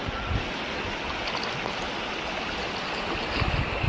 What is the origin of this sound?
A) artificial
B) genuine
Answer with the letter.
B